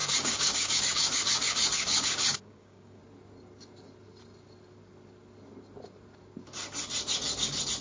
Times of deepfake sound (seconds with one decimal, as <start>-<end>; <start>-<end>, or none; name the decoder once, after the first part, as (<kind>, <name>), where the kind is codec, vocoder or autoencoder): 0.0-3.0 (codec, DAC)

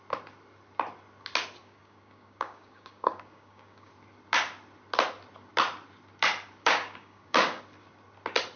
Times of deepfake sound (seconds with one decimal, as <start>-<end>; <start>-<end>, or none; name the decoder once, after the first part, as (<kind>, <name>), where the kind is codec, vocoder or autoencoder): 1.6-3.9 (codec, DAC); 6.6-7.6